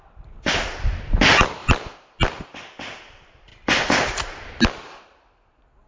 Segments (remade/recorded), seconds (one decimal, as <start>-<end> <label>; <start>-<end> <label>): 0.0-1.6 recorded; 1.6-2.6 remade; 2.6-3.5 recorded; 3.5-4.6 remade; 4.6-5.9 recorded